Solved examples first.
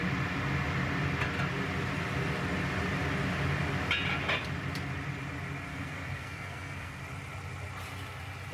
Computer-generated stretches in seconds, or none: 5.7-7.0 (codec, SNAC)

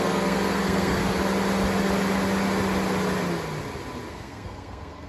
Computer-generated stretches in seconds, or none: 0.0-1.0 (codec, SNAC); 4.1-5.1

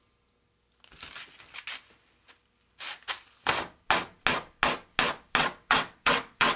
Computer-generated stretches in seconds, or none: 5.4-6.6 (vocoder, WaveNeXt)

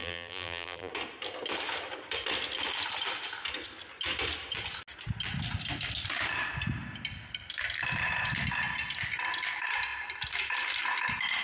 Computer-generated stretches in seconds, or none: 0.0-0.9 (vocoder, BigVGAN v2)

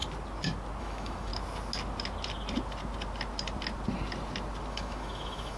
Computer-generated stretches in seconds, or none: 0.8-1.3 (autoencoder, DAC-VAE); 4.7-5.6

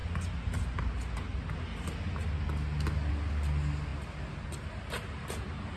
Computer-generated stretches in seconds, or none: none

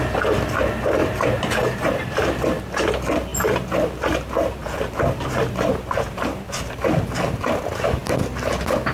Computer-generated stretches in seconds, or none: 1.0-2.3 (vocoder, BigVGAN v2); 4.6-7.0

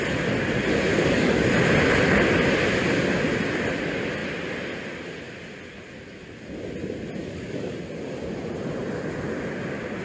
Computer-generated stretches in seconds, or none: 0.9-1.5 (codec, DAC); 7.2-7.8